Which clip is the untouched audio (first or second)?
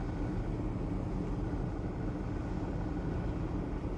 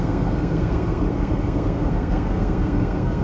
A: first